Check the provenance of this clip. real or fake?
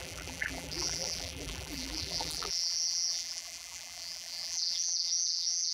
fake